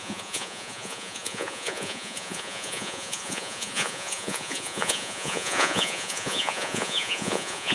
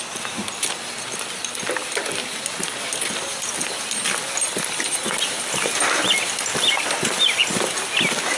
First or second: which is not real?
first